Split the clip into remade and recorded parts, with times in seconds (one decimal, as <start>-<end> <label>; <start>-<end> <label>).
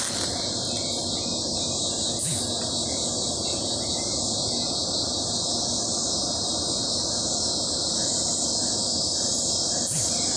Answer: 0.0-10.4 recorded